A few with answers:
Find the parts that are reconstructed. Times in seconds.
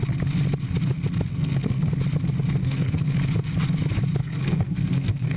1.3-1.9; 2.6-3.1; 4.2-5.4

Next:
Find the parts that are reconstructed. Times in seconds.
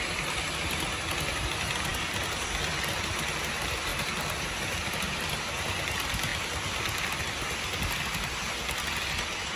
none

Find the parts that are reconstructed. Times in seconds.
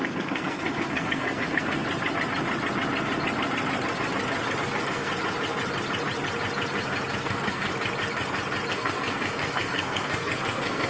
0.0-1.8; 4.6-5.1; 7.2-7.7; 8.7-10.9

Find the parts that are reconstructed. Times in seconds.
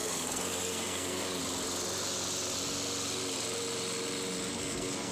0.0-1.4; 4.5-5.1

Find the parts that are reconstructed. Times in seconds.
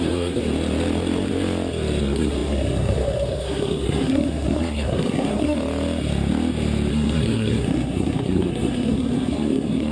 0.0-0.4; 2.0-5.6; 6.9-9.9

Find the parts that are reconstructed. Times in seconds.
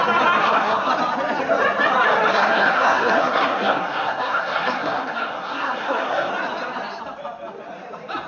0.4-0.9; 2.3-6.3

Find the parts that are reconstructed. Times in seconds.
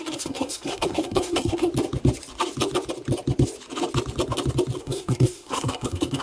0.0-1.7; 4.8-6.2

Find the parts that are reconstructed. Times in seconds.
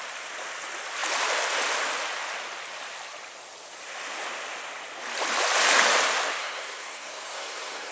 6.4-7.9